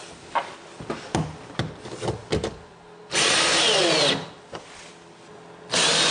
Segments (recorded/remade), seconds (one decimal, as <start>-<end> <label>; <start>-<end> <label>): 0.0-6.1 recorded

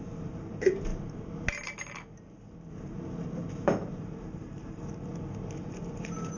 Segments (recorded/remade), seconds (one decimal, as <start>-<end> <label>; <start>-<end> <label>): 0.0-0.9 remade; 0.9-2.7 recorded; 2.7-5.1 remade; 5.1-5.6 recorded; 5.6-6.4 remade

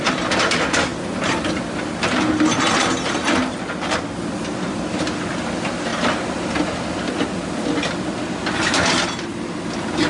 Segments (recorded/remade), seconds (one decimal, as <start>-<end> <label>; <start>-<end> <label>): 0.0-10.1 recorded